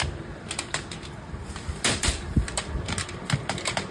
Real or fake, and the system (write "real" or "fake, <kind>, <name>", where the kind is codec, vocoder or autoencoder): real